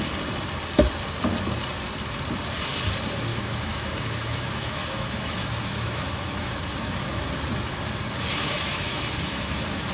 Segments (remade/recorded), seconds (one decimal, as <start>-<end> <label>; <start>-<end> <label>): 0.0-3.3 recorded; 3.3-7.3 remade; 7.3-8.4 recorded; 8.4-9.9 remade

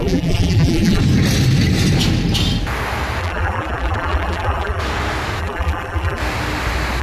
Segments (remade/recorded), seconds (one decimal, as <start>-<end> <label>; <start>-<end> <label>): 0.0-1.0 remade; 1.0-3.2 recorded; 3.2-4.8 remade; 4.8-5.4 recorded; 5.4-6.2 remade; 6.2-7.0 recorded

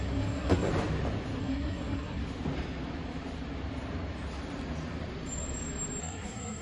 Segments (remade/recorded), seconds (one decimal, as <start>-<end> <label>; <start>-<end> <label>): 0.0-0.7 remade; 0.7-1.4 recorded; 1.4-2.2 remade; 2.2-6.0 recorded; 6.0-6.6 remade

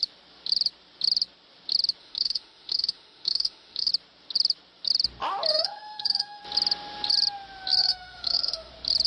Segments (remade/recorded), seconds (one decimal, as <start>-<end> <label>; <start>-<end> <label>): 0.0-2.0 recorded; 2.0-3.9 remade; 3.9-5.5 recorded; 5.5-6.4 remade; 6.4-7.8 recorded; 7.8-8.7 remade; 8.7-9.1 recorded

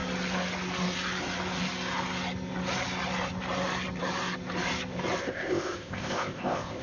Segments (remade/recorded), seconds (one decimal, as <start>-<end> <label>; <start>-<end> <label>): 0.0-5.2 recorded; 5.2-6.8 remade